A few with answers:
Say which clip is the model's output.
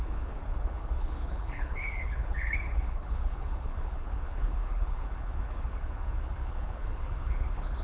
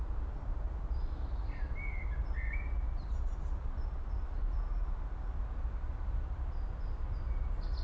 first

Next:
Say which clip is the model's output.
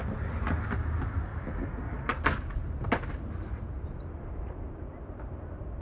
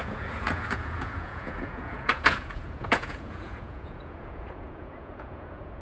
second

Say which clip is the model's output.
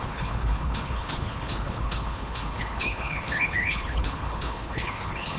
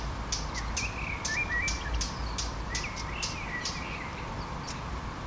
first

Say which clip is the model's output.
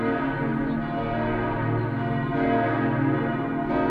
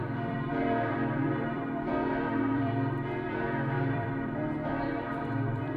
second